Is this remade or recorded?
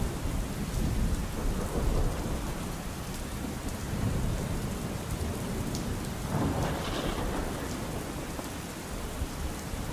remade